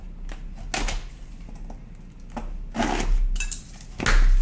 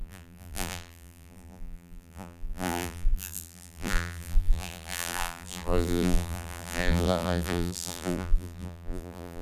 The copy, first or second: second